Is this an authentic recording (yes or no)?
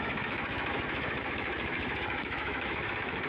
no